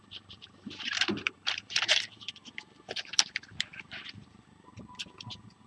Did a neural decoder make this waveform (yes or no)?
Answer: yes